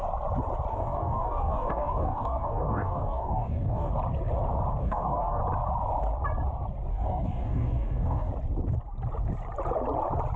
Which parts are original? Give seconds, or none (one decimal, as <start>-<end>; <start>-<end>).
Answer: 0.0-0.7; 3.9-4.8; 5.4-6.9; 8.3-10.4